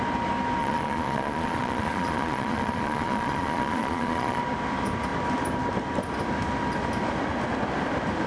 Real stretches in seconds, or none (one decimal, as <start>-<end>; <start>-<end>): 0.0-0.6; 4.4-8.3

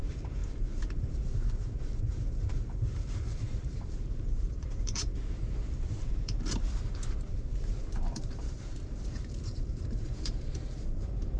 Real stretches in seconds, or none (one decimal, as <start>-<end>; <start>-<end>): none